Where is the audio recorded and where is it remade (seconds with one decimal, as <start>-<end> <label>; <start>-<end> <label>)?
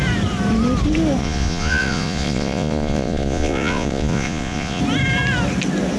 0.0-1.2 recorded; 1.2-4.8 remade; 4.8-6.0 recorded